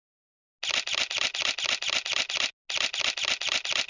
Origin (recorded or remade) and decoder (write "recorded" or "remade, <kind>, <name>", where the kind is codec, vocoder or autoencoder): recorded